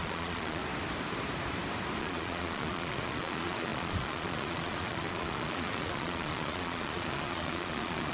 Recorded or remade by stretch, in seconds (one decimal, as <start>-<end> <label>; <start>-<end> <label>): 0.0-0.6 remade; 0.6-2.0 recorded; 2.0-8.1 remade